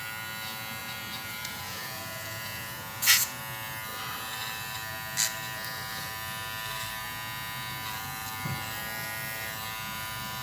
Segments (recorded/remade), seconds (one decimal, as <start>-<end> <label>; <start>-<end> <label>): 0.0-0.8 recorded; 0.8-3.4 remade; 3.4-10.4 recorded